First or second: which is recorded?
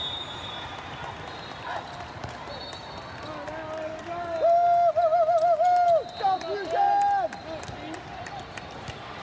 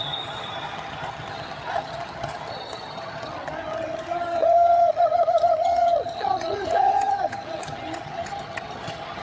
first